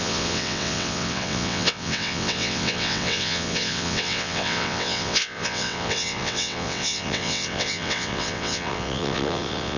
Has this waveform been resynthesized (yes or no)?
yes